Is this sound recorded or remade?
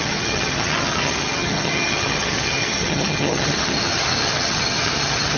remade